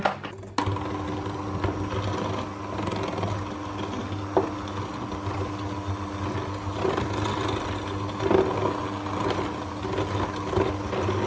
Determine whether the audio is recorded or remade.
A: recorded